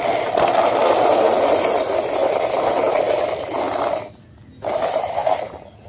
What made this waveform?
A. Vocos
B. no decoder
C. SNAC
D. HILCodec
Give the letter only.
B